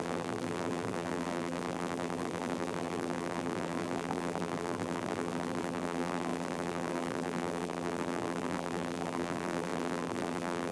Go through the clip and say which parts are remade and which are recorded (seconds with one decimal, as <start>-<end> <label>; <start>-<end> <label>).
0.0-10.7 remade